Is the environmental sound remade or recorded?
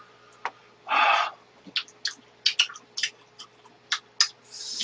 recorded